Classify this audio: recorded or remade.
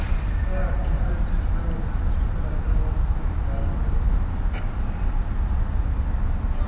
recorded